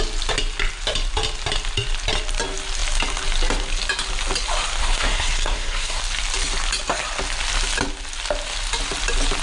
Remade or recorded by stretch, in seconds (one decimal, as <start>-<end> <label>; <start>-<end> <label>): 0.0-4.8 recorded; 4.8-6.0 remade; 6.0-9.4 recorded